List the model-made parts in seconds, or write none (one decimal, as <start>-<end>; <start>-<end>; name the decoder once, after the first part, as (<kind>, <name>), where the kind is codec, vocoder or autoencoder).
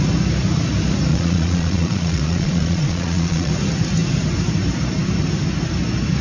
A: 1.1-3.5 (vocoder, Vocos)